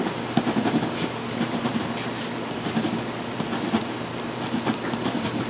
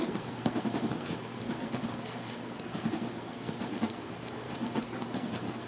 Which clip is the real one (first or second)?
first